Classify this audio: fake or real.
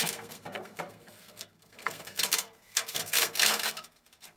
fake